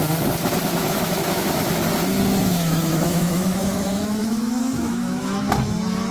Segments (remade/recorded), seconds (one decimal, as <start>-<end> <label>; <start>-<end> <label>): 0.0-0.8 recorded; 0.8-1.7 remade; 1.7-2.4 recorded; 2.4-5.4 remade; 5.4-6.1 recorded